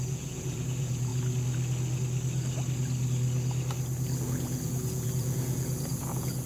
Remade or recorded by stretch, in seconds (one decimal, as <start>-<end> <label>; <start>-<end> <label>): 0.0-1.1 remade; 1.1-4.2 recorded; 4.2-6.5 remade